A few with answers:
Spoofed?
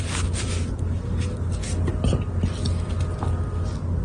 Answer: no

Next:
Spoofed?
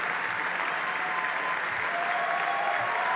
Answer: no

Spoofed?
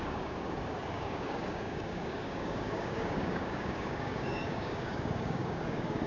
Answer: yes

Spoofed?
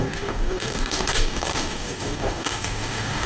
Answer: yes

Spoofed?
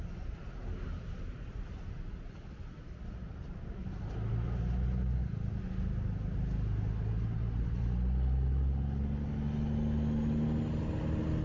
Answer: no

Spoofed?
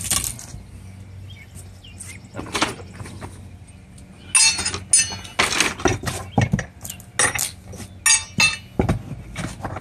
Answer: no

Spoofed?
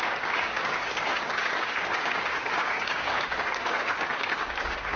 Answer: yes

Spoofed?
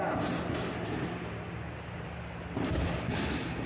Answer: no